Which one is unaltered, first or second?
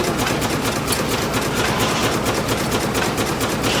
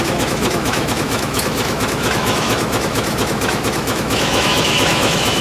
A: first